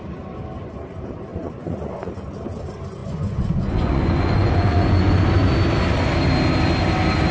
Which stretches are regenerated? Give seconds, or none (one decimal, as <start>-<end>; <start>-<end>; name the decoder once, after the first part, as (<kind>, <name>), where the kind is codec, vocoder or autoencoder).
1.3-2.2 (vocoder, Vocos); 3.0-5.2